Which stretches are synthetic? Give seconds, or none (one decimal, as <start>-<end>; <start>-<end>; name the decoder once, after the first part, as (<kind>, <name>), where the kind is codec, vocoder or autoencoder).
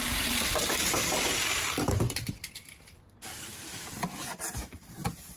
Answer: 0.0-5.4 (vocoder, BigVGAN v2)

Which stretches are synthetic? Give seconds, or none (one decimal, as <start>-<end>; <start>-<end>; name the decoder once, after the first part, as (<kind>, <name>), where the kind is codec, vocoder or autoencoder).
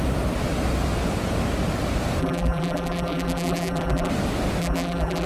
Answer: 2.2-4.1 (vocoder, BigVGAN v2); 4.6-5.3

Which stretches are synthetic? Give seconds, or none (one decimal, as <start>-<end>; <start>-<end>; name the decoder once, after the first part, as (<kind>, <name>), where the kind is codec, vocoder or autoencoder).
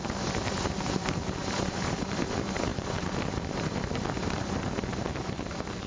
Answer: 0.0-5.9 (vocoder, BigVGAN v2)